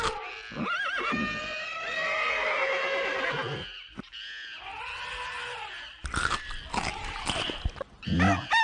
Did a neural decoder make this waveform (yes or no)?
no